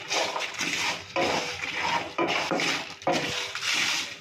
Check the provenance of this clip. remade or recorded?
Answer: recorded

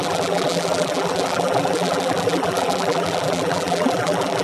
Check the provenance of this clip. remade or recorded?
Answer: remade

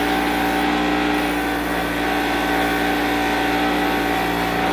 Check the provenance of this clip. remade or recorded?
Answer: recorded